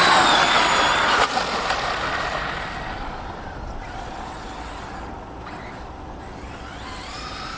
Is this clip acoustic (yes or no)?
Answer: no